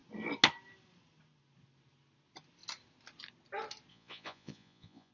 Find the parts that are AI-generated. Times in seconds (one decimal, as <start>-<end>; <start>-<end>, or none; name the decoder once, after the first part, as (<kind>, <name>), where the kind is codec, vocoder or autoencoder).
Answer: 3.9-5.1 (vocoder, Vocos)